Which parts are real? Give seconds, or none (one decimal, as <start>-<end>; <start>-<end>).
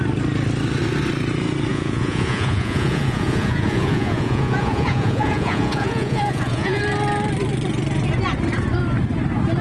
0.0-1.7; 6.8-9.6